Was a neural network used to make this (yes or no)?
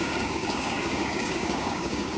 yes